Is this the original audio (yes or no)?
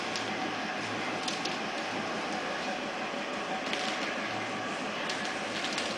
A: yes